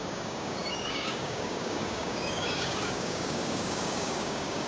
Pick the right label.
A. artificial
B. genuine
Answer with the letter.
A